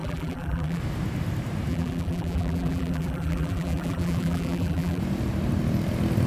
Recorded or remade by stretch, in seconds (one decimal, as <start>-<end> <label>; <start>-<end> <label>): 0.0-0.8 remade; 0.8-1.7 recorded; 1.7-5.0 remade; 5.0-6.3 recorded